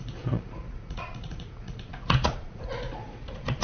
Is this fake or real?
fake